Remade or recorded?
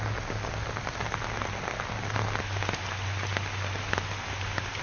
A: recorded